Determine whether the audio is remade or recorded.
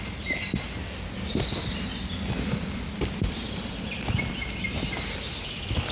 recorded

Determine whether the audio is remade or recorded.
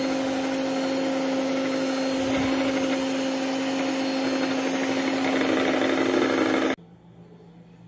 recorded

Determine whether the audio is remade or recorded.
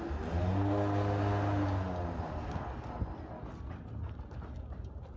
recorded